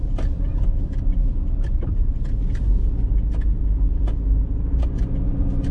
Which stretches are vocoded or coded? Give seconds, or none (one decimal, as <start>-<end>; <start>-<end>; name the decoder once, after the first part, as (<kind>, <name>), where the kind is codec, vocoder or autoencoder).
none